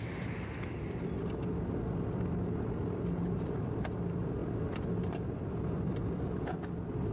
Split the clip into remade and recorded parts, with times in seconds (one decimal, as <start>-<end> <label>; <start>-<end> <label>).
0.0-4.4 recorded; 4.4-6.4 remade; 6.4-7.1 recorded